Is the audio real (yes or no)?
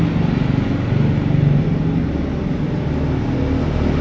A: yes